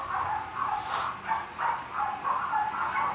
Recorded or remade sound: recorded